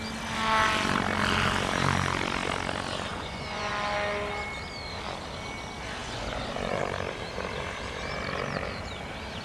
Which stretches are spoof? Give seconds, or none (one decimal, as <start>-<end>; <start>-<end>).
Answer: 3.1-3.7; 6.0-6.8